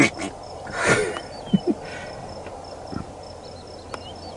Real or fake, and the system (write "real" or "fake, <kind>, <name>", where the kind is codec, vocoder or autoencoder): real